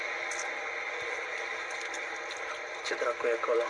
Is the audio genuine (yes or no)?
yes